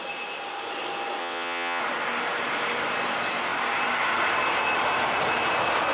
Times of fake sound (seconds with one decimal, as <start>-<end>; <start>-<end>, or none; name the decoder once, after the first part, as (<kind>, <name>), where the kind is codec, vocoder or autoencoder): 1.2-1.8 (vocoder, WaveNeXt)